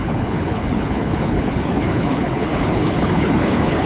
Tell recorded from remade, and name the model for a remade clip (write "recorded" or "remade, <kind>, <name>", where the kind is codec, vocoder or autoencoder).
remade, codec, HILCodec